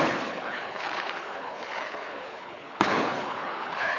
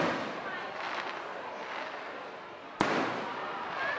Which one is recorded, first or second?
second